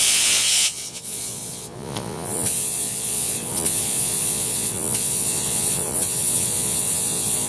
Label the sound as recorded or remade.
remade